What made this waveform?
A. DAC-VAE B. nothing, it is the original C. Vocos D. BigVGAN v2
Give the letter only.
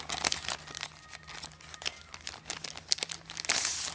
B